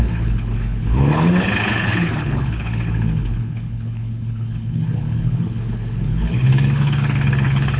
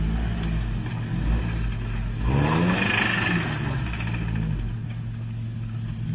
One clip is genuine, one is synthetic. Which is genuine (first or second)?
second